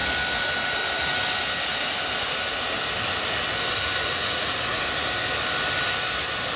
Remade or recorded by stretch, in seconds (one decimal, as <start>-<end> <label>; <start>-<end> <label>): 0.0-4.0 recorded; 4.0-4.8 remade; 4.8-6.6 recorded